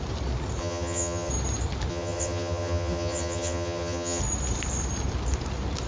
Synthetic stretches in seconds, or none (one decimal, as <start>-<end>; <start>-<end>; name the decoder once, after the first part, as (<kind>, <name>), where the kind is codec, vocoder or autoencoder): 0.6-1.3 (vocoder, HiFi-GAN); 1.9-4.2